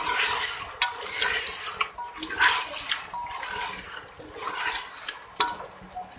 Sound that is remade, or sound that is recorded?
recorded